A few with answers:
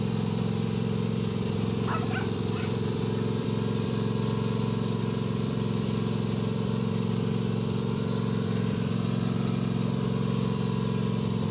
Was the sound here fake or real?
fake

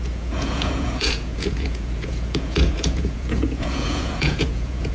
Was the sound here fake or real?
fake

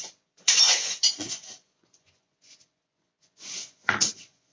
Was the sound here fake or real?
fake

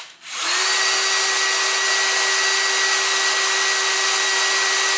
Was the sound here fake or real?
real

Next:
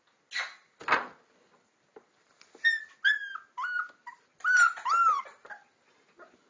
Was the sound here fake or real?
real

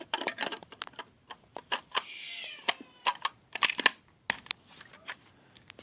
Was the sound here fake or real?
real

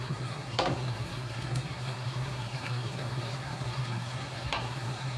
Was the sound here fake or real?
fake